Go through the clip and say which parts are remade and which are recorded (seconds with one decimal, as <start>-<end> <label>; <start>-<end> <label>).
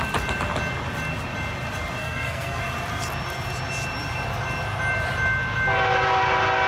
0.0-2.0 recorded; 2.0-2.6 remade; 2.6-6.7 recorded